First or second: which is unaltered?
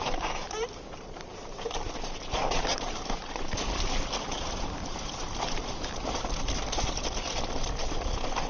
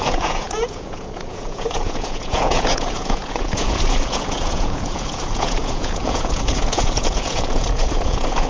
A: first